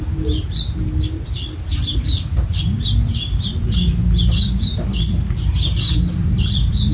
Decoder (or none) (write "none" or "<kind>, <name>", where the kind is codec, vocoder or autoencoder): none